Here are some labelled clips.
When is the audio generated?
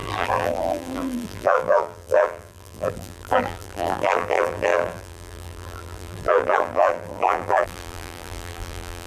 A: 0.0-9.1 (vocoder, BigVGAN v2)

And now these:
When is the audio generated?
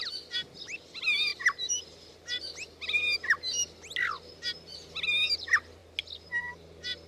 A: 1.3-2.4 (vocoder, BigVGAN v2)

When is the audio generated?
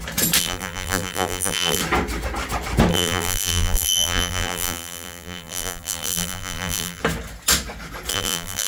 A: 0.4-1.8 (vocoder, BigVGAN v2); 2.9-7.0; 8.1-8.7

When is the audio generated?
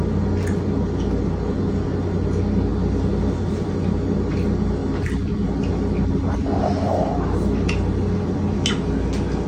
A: 2.7-3.7 (vocoder, BigVGAN v2)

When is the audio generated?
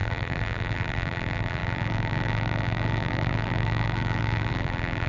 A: 0.0-5.1 (vocoder, BigVGAN v2)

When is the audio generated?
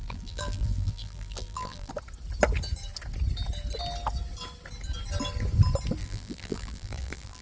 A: 0.0-1.9 (vocoder, BigVGAN v2); 6.0-7.4